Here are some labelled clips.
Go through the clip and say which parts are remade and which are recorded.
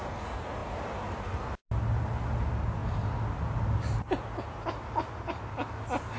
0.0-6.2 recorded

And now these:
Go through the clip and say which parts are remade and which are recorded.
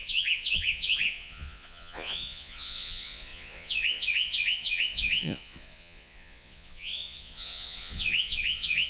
0.0-8.9 remade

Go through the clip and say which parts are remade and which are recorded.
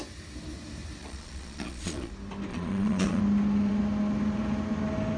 0.0-1.0 recorded; 1.0-2.1 remade; 2.1-2.5 recorded; 2.5-3.2 remade; 3.2-5.2 recorded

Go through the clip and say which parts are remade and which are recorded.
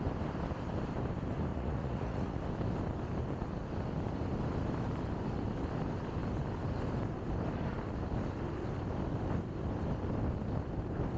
0.0-1.5 recorded; 1.5-2.4 remade; 2.4-11.2 recorded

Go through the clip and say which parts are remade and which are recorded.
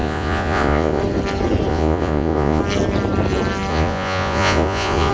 0.0-1.0 remade; 1.0-1.7 recorded; 1.7-2.6 remade; 2.6-3.7 recorded; 3.7-5.1 remade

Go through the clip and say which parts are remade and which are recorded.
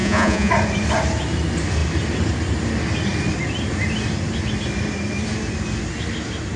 0.0-0.5 remade; 0.5-6.6 recorded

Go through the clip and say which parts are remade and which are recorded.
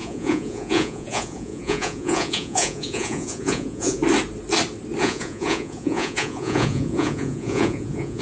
0.0-4.0 remade; 4.0-5.0 recorded; 5.0-8.2 remade